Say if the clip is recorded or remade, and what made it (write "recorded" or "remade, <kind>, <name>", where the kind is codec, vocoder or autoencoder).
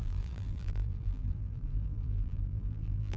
remade, vocoder, BigVGAN v2